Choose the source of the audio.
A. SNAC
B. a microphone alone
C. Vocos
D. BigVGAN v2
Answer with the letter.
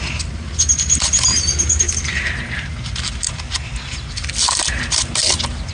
B